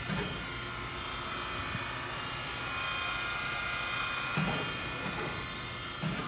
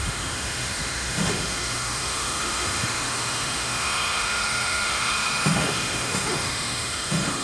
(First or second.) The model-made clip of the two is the second